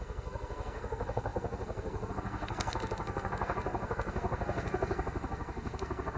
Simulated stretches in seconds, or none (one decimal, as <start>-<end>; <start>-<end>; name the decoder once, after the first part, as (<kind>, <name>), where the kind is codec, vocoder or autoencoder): 0.0-6.2 (codec, SNAC)